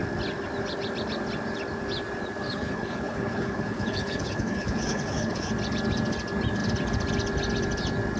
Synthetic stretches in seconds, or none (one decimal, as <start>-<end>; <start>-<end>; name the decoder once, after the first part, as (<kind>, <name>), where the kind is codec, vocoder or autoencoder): 2.5-5.5 (codec, HILCodec)